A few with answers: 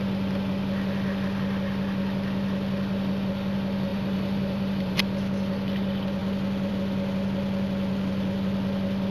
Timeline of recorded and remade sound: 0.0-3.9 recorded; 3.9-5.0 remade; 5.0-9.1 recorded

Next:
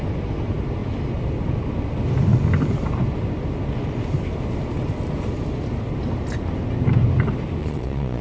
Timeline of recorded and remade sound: 0.0-7.6 recorded; 7.6-8.2 remade